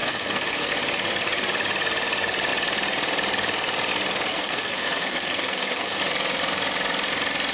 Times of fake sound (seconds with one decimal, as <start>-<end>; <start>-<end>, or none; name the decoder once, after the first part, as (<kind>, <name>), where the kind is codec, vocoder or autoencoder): 0.0-0.7 (codec, SNAC); 4.3-6.0